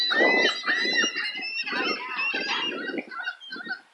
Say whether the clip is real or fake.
real